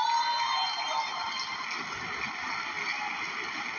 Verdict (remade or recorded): recorded